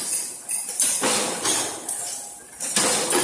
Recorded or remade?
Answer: recorded